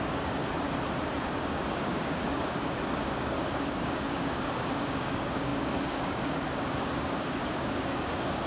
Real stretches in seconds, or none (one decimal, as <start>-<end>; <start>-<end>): 0.4-1.2